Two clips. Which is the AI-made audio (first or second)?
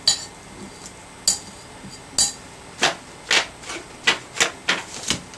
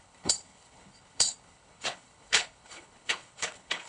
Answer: second